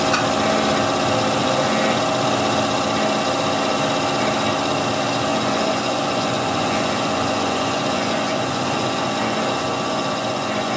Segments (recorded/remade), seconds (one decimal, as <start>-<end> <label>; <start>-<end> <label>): 0.0-1.4 recorded; 1.4-2.0 remade; 2.0-5.3 recorded; 5.3-10.8 remade